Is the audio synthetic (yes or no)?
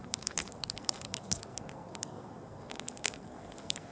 yes